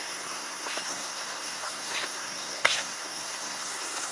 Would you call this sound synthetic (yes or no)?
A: yes